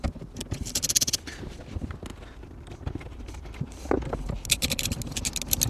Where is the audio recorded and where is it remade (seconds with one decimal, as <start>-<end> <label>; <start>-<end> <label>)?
0.0-2.1 recorded; 2.1-4.2 remade; 4.2-5.7 recorded